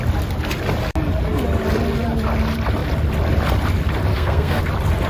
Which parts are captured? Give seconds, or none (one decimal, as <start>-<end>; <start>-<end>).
0.0-4.1; 4.6-5.1